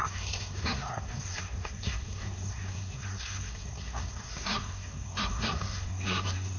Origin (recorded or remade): remade